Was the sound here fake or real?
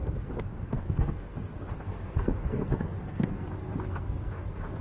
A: fake